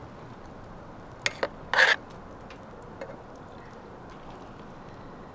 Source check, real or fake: real